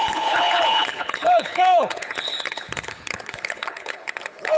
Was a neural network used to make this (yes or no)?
yes